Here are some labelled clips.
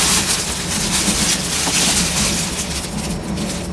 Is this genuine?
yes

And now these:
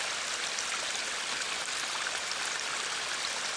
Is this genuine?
yes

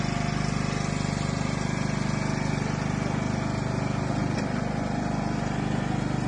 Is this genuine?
yes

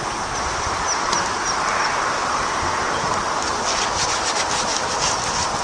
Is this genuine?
yes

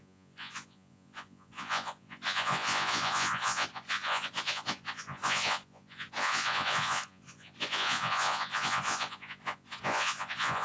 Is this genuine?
no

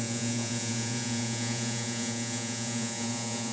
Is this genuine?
no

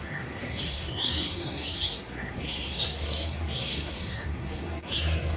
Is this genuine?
no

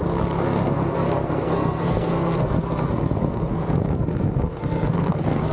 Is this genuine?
no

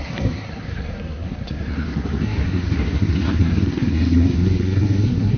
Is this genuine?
no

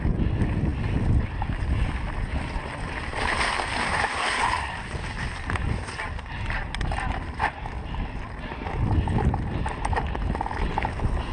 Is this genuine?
yes